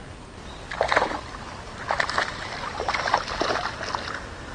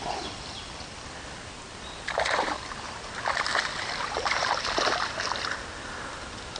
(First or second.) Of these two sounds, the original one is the first